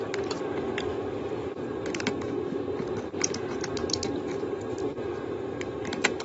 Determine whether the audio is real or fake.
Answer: fake